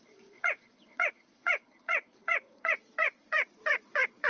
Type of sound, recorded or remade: remade